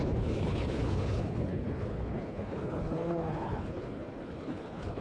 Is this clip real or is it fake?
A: fake